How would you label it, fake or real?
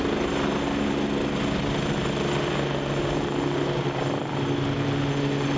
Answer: real